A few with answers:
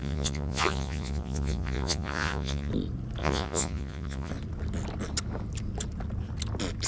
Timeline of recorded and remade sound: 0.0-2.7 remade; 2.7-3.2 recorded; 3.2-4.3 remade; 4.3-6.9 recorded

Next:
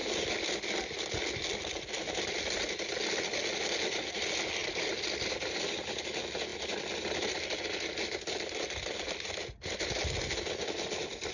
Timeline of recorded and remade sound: 0.0-11.3 recorded

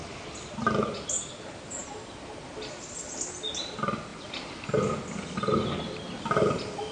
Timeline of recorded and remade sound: 0.0-6.9 recorded